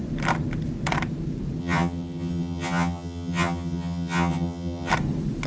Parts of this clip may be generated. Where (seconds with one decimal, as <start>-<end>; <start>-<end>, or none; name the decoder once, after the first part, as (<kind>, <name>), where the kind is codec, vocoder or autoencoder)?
1.6-4.9 (vocoder, HiFi-GAN)